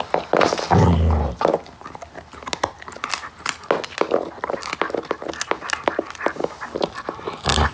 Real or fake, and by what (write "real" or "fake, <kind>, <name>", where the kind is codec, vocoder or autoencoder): real